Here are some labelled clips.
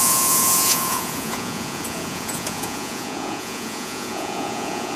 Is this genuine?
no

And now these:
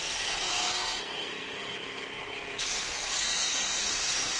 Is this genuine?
no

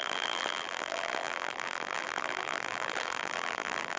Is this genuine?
no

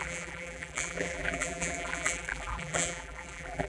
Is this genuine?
no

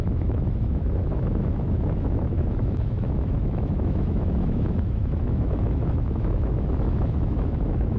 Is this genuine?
no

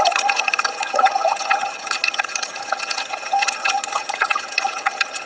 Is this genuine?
no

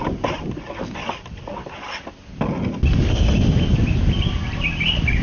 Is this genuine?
yes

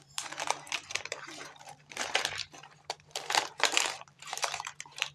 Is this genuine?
no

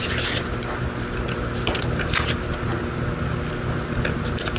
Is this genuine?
yes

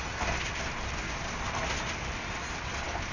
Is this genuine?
yes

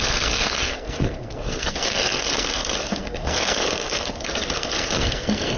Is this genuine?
no